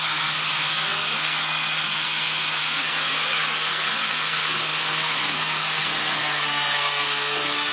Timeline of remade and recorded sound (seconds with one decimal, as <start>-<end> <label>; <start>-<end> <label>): 0.0-7.7 remade